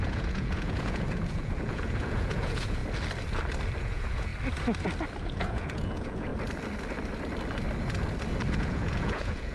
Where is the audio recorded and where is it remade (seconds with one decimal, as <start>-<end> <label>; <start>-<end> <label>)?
0.0-2.8 remade; 2.8-3.8 recorded; 3.8-4.3 remade; 4.3-5.2 recorded; 5.2-6.3 remade; 6.3-8.5 recorded; 8.5-9.5 remade